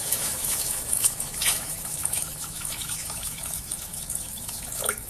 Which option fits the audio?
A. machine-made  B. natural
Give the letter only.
A